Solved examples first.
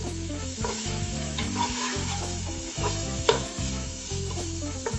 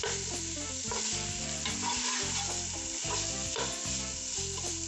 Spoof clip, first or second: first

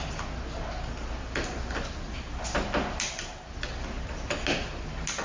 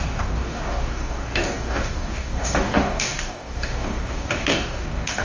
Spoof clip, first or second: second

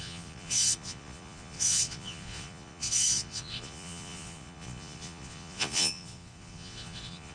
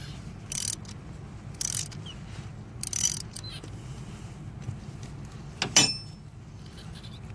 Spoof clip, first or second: first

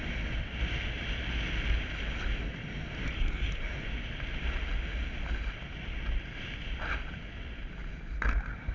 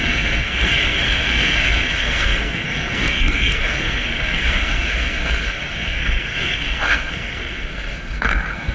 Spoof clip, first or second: second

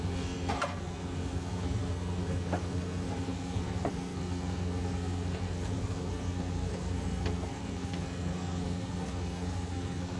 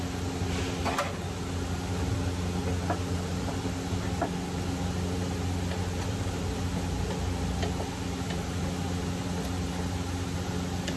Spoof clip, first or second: first